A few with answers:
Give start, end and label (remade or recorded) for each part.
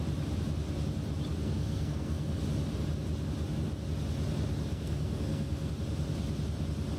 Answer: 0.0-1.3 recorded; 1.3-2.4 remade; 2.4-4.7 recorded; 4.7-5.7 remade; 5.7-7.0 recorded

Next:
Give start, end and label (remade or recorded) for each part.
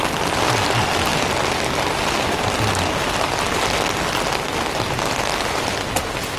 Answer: 0.0-6.4 recorded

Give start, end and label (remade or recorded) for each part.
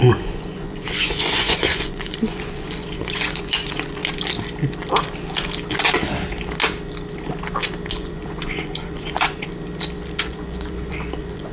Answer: 0.0-4.0 remade; 4.0-7.9 recorded; 7.9-9.5 remade; 9.5-10.2 recorded; 10.2-11.5 remade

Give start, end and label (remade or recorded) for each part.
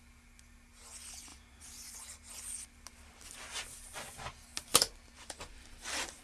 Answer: 0.0-1.3 recorded; 1.3-2.3 remade; 2.3-4.7 recorded; 4.7-6.2 remade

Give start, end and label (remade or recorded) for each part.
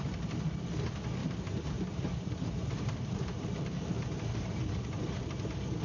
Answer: 0.0-1.2 recorded; 1.2-4.7 remade; 4.7-5.8 recorded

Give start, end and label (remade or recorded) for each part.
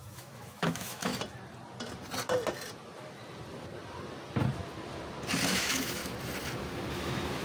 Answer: 0.0-1.1 remade; 1.1-5.5 recorded; 5.5-6.0 remade; 6.0-6.9 recorded; 6.9-7.4 remade